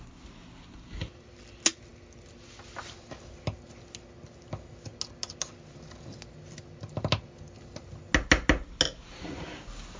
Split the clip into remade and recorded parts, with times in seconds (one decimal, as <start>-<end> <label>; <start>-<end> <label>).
0.0-10.0 recorded